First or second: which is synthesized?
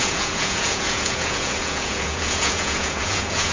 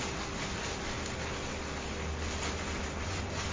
first